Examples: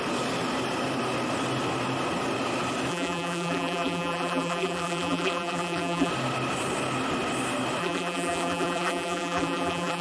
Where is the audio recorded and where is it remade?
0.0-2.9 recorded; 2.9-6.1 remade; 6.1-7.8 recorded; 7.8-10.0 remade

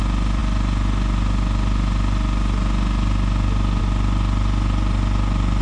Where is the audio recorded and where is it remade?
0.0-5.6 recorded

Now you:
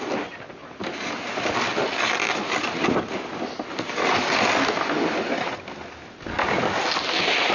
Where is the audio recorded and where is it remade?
0.0-0.6 recorded; 0.6-1.5 remade; 1.5-7.5 recorded

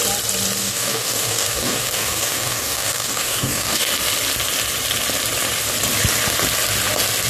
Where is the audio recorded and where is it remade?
0.0-0.6 recorded; 0.6-3.9 remade; 3.9-7.3 recorded